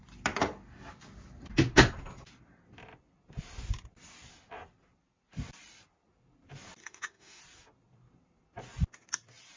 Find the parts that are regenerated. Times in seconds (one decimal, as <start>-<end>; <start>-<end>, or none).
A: 6.8-7.4